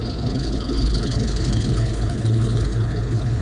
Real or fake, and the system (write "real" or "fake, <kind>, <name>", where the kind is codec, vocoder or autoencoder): fake, codec, HILCodec